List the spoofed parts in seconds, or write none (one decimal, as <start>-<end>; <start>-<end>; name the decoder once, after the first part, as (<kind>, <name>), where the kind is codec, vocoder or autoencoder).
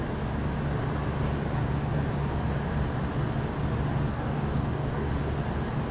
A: 4.1-5.1 (codec, DAC)